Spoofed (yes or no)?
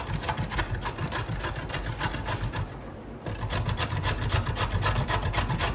no